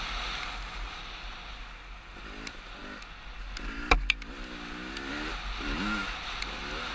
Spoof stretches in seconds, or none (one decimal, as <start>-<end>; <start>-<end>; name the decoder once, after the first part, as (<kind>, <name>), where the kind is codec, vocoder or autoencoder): none